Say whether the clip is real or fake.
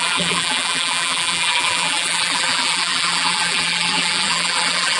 fake